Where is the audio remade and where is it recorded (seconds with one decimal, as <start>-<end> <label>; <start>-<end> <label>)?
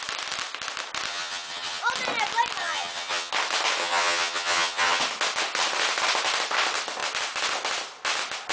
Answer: 0.0-1.1 recorded; 1.1-1.8 remade; 1.8-2.6 recorded; 2.6-3.3 remade; 3.3-3.8 recorded; 3.8-5.0 remade; 5.0-8.5 recorded